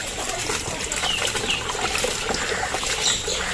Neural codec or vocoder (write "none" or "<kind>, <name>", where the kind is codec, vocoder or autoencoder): none